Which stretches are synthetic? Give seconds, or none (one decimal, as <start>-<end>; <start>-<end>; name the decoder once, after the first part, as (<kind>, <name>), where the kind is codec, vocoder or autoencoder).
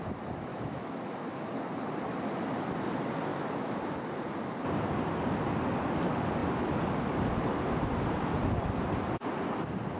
0.5-1.5 (autoencoder, DAC-VAE); 3.3-3.8